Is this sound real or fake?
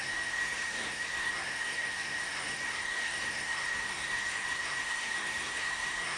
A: fake